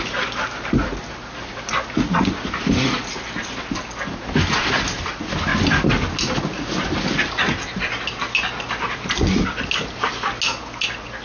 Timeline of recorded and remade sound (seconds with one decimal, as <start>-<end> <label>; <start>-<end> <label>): 0.0-11.2 recorded